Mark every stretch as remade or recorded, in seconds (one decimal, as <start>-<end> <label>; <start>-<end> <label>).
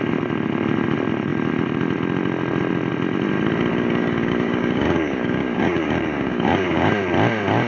0.0-3.7 recorded; 3.7-6.9 remade; 6.9-7.7 recorded